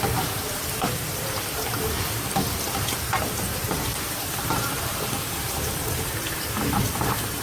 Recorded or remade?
remade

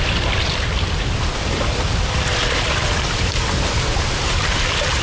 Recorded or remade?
remade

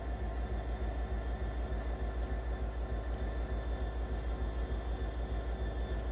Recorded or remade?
recorded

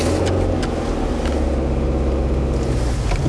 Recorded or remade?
recorded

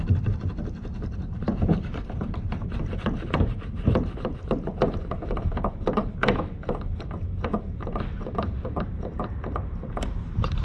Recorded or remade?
remade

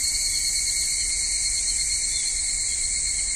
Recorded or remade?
recorded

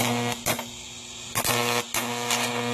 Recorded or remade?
recorded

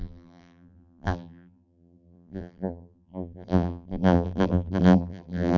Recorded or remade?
remade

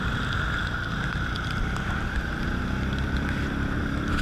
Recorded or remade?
remade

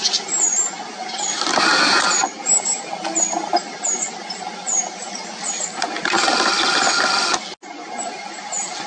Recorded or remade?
recorded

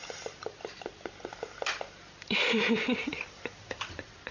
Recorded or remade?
remade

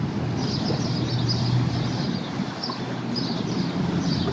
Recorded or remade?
remade